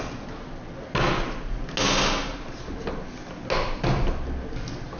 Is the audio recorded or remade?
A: recorded